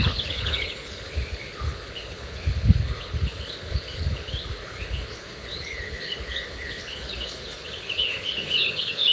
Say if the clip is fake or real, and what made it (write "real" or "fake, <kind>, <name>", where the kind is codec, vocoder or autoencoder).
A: fake, codec, HILCodec